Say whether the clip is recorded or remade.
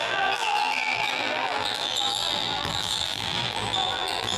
remade